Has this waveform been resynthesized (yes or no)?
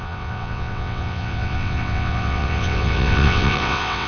yes